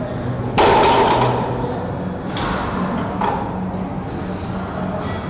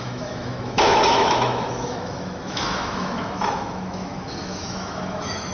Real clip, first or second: first